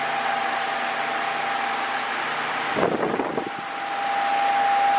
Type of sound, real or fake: real